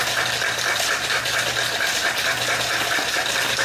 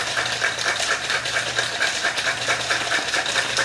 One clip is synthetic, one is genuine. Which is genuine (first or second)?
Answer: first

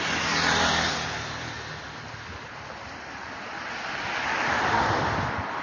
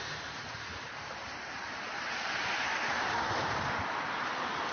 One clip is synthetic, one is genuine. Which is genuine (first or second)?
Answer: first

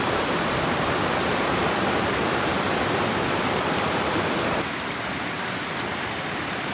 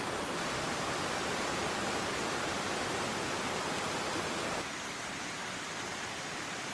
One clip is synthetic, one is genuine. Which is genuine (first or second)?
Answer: second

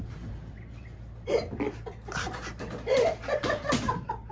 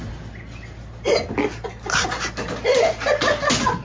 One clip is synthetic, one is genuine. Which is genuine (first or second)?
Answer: second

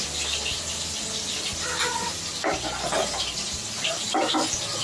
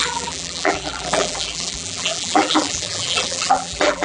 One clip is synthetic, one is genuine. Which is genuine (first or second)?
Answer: first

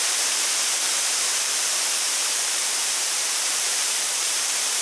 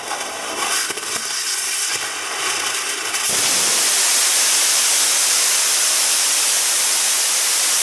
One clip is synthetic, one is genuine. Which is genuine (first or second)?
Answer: second